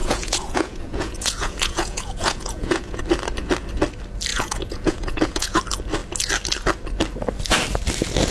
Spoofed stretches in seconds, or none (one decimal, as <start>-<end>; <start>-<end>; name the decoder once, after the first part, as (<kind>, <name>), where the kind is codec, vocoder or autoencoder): 0.0-3.0 (vocoder, Vocos); 4.3-5.6